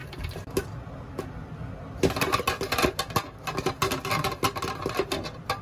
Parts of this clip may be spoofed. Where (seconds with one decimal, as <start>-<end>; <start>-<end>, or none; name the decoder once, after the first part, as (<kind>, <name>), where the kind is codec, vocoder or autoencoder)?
none